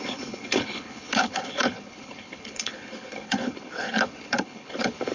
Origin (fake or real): fake